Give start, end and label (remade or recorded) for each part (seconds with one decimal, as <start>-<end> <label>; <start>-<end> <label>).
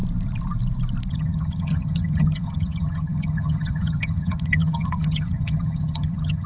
0.0-1.1 recorded; 1.1-6.5 remade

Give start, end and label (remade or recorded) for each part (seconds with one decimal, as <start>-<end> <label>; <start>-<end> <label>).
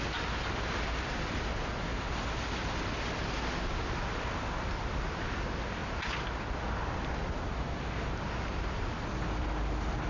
0.0-10.1 recorded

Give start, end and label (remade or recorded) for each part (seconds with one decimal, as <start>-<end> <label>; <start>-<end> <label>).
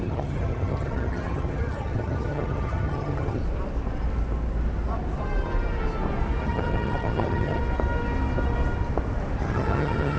0.0-3.4 remade; 3.4-6.4 recorded; 6.4-7.6 remade; 7.6-9.4 recorded; 9.4-10.2 remade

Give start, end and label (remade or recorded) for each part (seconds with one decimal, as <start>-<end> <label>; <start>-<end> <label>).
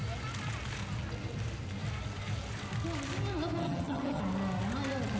0.0-3.6 recorded; 3.6-4.2 remade; 4.2-5.2 recorded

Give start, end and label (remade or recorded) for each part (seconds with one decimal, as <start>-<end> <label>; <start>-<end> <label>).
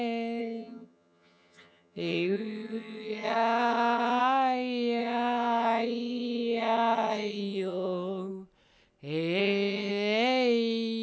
0.0-0.4 recorded; 0.4-4.2 remade; 4.2-5.0 recorded; 5.0-8.3 remade; 8.3-9.4 recorded; 9.4-9.9 remade; 9.9-11.0 recorded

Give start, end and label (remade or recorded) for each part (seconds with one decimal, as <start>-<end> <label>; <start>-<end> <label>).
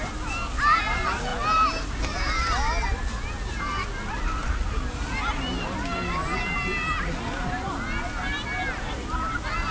0.0-9.7 recorded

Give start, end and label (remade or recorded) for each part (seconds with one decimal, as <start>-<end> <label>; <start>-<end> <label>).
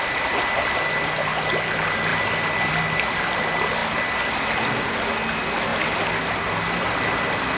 0.0-7.6 recorded